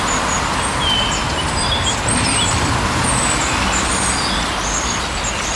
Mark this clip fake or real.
real